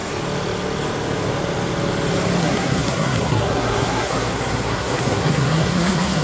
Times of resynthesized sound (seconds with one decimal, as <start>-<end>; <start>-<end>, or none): 2.4-6.2